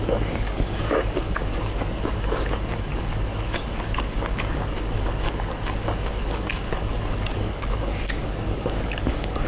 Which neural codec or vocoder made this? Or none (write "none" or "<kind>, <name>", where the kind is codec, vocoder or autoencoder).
codec, DAC